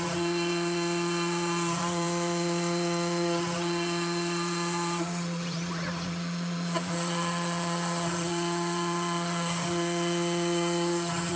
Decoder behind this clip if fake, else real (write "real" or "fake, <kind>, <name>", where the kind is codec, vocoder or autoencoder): fake, vocoder, Vocos